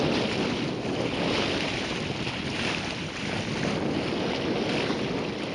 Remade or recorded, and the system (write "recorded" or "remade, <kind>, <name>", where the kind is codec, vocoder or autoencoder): recorded